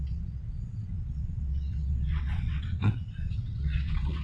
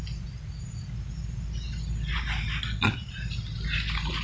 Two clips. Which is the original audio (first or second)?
second